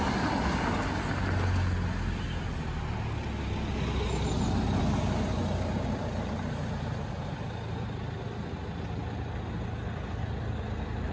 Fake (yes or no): no